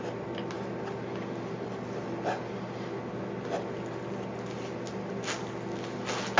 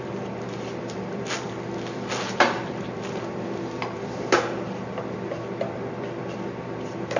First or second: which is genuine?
first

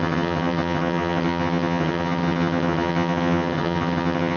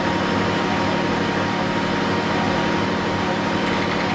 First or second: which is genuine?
second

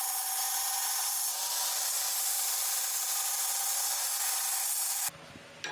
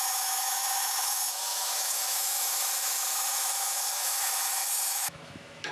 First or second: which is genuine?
first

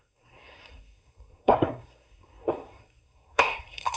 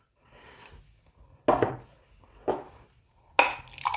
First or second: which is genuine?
second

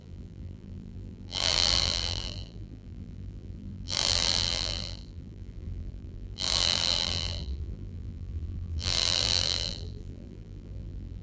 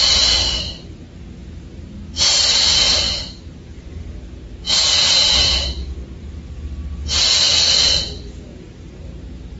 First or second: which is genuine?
second